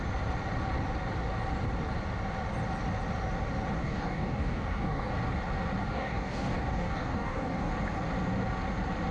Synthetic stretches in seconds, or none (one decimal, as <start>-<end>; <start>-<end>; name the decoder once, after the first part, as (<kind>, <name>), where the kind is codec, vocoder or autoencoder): 3.8-5.1 (codec, DAC); 5.8-7.7